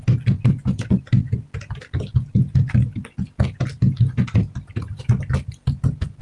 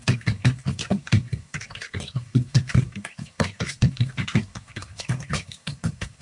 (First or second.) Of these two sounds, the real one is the first